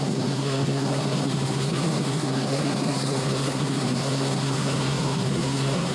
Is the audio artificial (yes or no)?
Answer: yes